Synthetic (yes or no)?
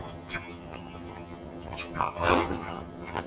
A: yes